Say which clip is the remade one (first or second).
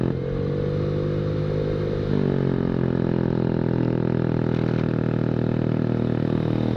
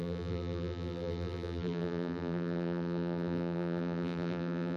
second